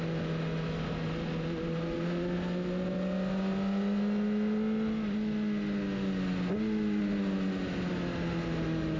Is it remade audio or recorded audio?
recorded